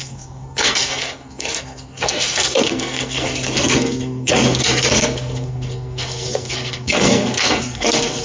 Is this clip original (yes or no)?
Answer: no